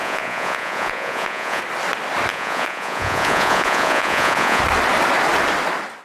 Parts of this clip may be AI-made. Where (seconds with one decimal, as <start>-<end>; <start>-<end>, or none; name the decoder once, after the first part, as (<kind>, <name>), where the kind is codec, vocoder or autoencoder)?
0.0-1.6 (vocoder, Vocos); 2.3-4.6